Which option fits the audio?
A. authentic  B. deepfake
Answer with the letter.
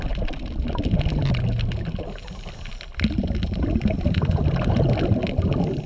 A